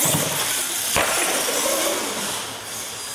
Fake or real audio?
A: real